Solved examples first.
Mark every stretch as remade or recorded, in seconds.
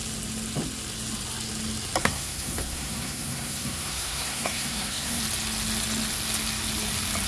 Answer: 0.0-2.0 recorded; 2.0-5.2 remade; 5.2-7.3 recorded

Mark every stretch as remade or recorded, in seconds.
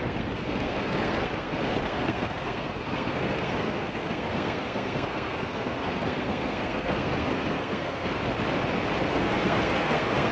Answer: 0.0-8.2 remade; 8.2-9.1 recorded; 9.1-10.3 remade